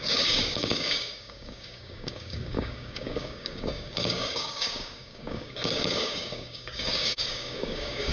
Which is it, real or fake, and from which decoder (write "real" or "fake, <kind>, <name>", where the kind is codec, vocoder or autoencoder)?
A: fake, codec, DAC